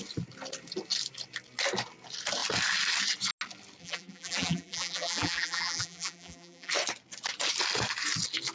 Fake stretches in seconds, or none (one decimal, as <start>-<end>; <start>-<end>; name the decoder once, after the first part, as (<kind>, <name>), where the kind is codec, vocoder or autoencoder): 3.8-6.7 (vocoder, BigVGAN v2)